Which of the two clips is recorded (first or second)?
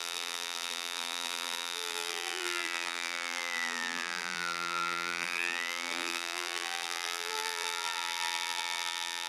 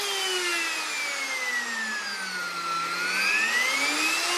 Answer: second